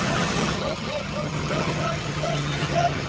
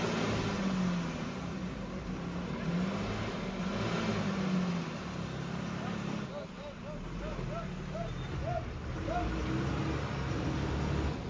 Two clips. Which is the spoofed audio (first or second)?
first